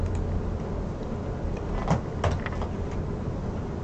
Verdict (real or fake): real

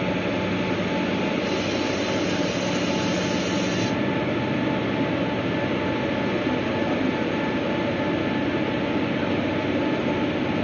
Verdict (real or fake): real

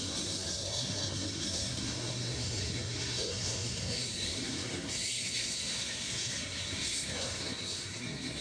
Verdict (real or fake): fake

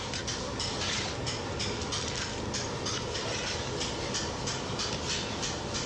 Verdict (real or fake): real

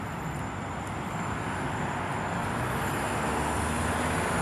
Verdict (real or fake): real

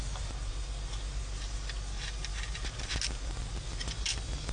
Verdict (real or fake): real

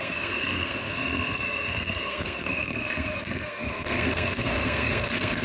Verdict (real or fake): fake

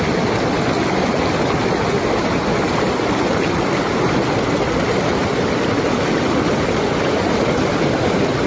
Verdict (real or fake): real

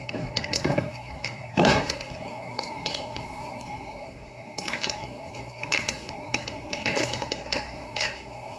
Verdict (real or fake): fake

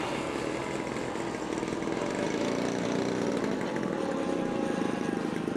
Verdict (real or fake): real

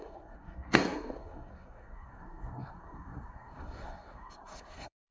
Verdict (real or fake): fake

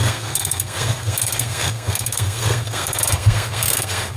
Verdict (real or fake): fake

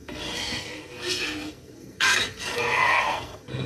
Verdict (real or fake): fake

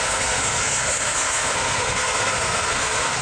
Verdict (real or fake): fake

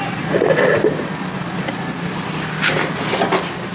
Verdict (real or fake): real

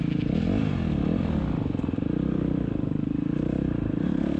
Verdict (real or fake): real